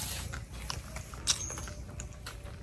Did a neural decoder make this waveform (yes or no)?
no